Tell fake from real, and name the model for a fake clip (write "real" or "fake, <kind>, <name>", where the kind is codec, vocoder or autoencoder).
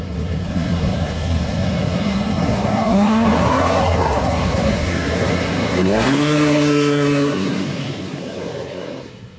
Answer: fake, codec, SNAC